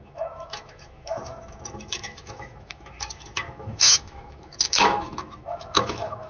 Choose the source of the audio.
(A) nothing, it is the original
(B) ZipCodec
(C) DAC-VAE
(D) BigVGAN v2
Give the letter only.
C